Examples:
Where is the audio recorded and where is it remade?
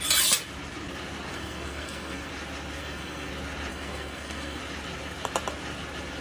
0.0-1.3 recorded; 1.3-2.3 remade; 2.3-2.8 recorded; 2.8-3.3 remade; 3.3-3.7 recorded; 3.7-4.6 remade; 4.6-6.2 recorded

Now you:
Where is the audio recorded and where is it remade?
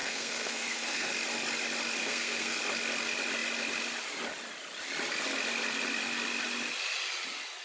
0.0-1.1 remade; 1.1-2.0 recorded; 2.0-2.6 remade; 2.6-7.6 recorded